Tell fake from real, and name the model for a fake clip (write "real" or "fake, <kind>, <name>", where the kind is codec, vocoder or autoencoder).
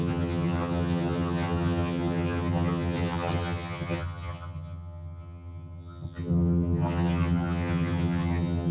fake, vocoder, HiFi-GAN